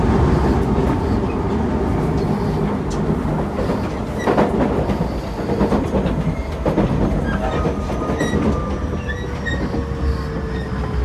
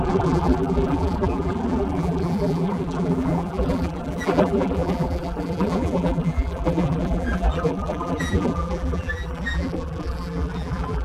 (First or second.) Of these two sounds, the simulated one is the second